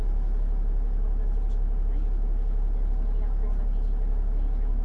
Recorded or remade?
recorded